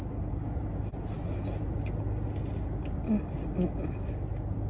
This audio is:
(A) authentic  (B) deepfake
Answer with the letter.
A